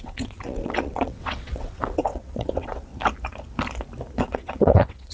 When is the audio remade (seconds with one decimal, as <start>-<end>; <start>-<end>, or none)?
0.0-2.9; 4.2-5.1